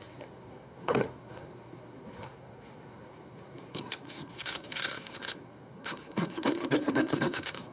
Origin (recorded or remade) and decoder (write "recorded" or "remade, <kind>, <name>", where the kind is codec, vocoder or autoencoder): remade, codec, SNAC